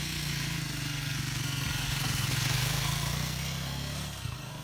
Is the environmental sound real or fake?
fake